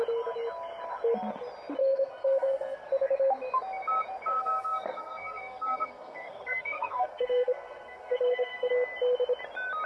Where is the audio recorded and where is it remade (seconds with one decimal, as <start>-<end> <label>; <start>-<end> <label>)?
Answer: 0.0-1.8 recorded; 1.8-2.9 remade; 2.9-4.3 recorded; 4.3-8.7 remade; 8.7-9.9 recorded